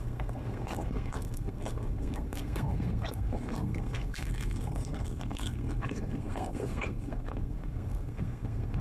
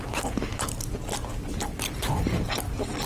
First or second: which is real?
second